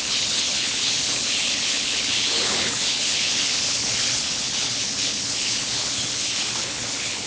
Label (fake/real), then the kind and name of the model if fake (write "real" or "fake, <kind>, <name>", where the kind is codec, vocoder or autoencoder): fake, codec, HILCodec